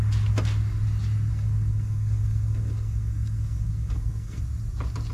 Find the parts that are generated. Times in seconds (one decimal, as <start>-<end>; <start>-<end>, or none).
1.3-4.4